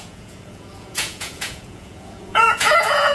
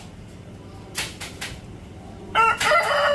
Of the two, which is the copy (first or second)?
first